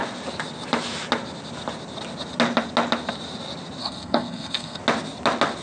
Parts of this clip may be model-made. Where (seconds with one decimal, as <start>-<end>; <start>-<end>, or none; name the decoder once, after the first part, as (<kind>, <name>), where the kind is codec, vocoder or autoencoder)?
3.8-4.8 (codec, SNAC)